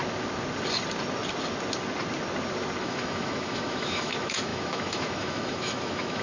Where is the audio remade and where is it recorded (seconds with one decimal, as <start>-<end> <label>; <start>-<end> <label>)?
0.0-2.8 recorded; 2.8-6.2 remade